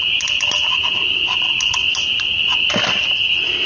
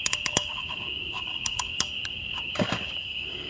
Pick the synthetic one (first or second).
second